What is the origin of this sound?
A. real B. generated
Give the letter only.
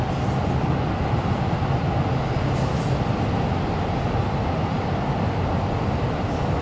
A